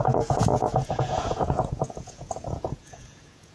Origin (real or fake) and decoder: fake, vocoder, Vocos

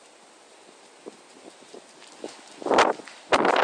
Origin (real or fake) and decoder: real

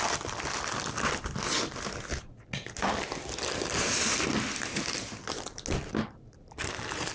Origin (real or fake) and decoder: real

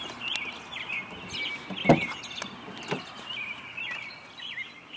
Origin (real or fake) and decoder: real